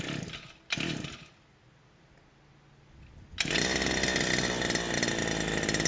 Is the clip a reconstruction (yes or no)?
no